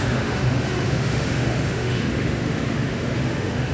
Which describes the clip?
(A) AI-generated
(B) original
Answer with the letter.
A